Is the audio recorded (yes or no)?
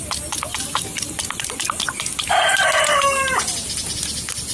yes